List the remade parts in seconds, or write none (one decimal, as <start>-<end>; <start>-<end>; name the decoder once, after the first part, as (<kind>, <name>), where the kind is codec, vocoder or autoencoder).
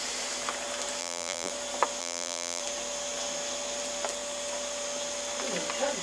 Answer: 1.0-1.5 (vocoder, BigVGAN v2); 2.0-2.6